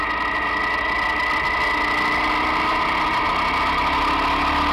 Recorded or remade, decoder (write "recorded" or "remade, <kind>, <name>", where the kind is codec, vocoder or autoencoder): recorded